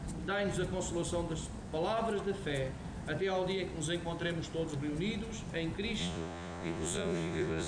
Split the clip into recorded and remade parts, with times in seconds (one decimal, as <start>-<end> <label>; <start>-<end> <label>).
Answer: 0.0-6.0 recorded; 6.0-7.7 remade